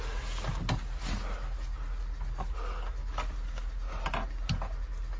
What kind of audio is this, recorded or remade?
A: recorded